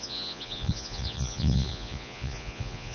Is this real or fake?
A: fake